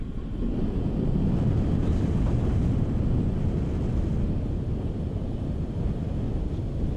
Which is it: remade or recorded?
recorded